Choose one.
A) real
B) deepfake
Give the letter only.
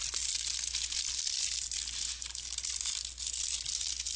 A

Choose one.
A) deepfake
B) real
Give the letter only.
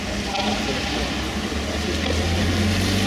B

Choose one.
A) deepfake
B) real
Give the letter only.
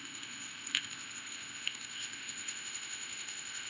A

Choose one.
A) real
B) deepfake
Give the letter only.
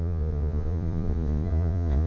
B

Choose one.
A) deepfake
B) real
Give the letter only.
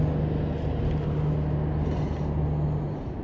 B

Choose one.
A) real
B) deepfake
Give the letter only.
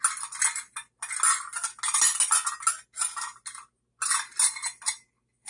A